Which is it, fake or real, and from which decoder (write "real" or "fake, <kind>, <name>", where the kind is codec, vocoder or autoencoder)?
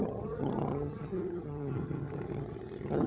fake, vocoder, HiFi-GAN